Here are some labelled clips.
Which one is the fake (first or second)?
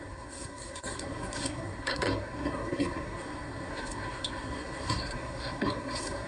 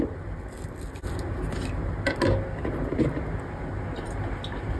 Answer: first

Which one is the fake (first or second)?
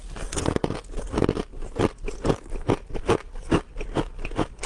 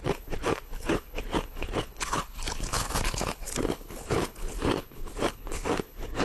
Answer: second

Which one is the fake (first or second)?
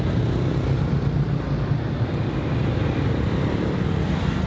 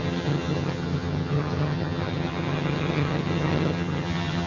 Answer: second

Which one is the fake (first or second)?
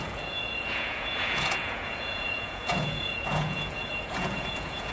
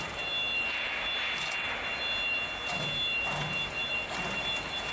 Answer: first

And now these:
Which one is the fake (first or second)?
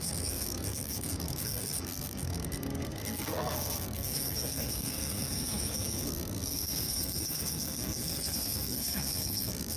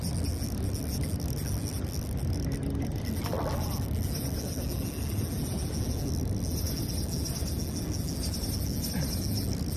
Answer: first